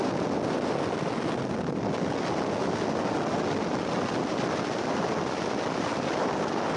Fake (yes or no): no